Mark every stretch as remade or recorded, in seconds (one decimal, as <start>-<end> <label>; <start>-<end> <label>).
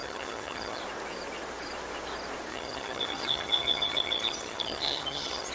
0.0-0.8 remade; 0.8-2.5 recorded; 2.5-5.5 remade